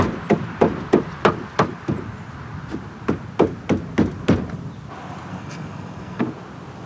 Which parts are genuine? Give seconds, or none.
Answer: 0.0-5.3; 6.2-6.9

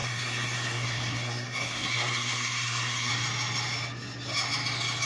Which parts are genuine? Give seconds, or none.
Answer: 3.1-5.1

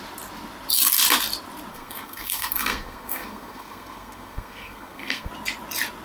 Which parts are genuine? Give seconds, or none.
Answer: 0.0-1.7; 5.3-6.0

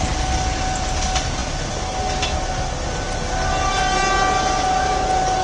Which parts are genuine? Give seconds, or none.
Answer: 0.0-5.4